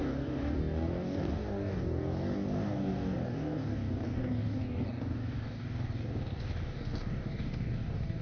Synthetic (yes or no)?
yes